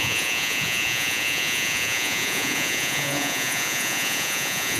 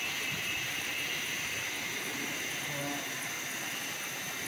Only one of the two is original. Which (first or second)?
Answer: second